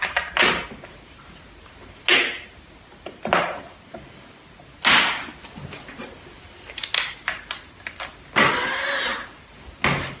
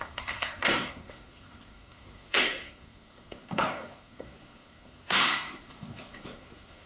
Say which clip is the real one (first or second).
first